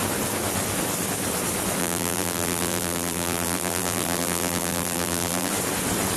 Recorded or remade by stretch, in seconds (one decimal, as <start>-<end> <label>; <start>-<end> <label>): 0.0-1.8 recorded; 1.8-5.5 remade; 5.5-6.2 recorded